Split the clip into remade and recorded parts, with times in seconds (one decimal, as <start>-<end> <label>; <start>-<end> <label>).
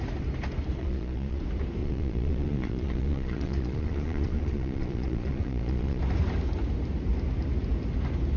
0.0-0.8 recorded; 0.8-1.4 remade; 1.4-1.8 recorded; 1.8-6.0 remade; 6.0-8.4 recorded